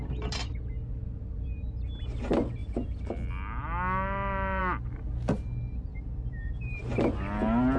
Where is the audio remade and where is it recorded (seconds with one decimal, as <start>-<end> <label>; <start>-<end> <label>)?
0.0-5.9 recorded; 5.9-6.8 remade; 6.8-7.8 recorded